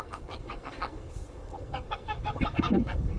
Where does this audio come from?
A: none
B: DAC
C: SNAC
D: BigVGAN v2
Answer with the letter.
C